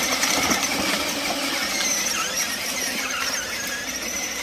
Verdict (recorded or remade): recorded